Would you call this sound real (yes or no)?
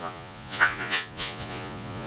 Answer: no